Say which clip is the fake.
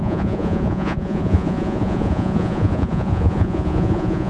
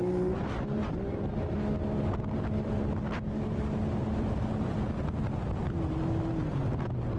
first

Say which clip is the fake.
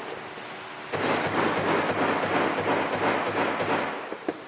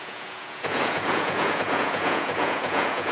second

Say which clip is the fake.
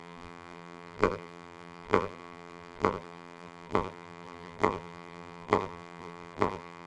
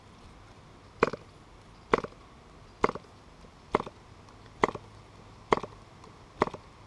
first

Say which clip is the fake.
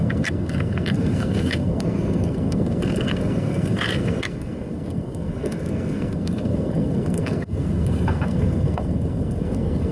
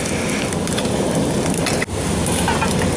first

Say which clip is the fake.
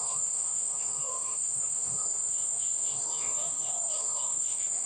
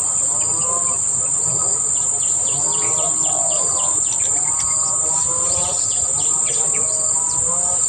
first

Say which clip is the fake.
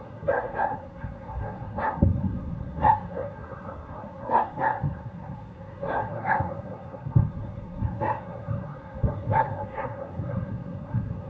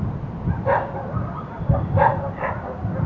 first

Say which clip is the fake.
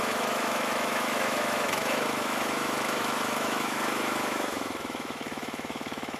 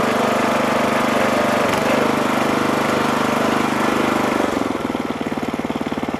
first